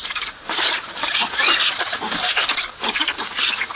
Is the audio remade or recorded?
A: recorded